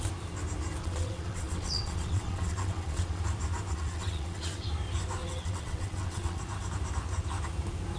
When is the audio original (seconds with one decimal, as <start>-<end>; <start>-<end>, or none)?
0.0-0.8; 3.2-3.7; 4.7-5.2; 6.4-8.0